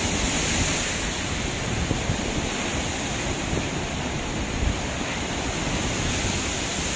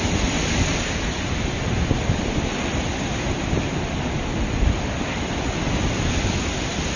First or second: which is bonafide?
second